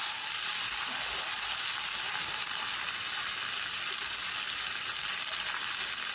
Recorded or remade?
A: recorded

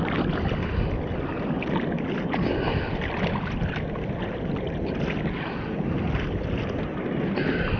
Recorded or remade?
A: recorded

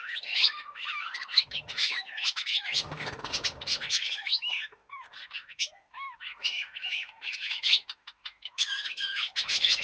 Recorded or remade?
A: remade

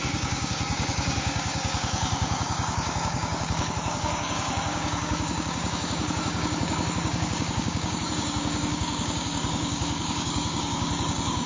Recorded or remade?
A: remade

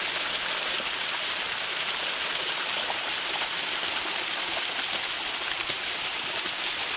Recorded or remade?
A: recorded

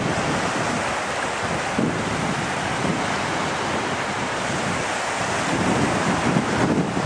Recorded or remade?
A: recorded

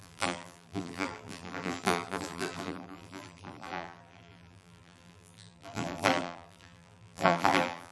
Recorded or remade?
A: remade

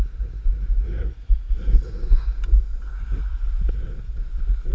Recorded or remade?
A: recorded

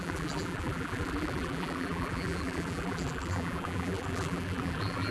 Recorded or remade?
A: remade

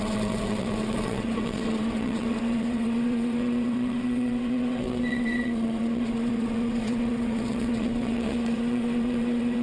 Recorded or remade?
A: remade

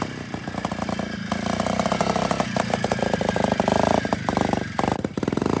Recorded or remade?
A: remade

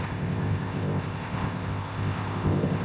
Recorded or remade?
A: remade